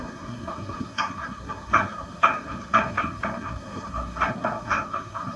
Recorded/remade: remade